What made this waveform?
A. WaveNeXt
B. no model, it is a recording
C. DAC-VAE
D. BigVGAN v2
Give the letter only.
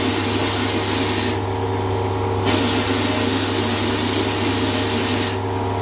B